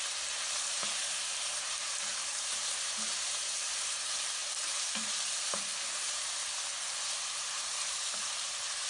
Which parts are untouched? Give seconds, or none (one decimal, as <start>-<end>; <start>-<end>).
6.3-7.0